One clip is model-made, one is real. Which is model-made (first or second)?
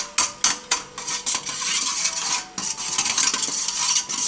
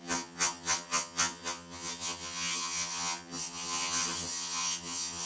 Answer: second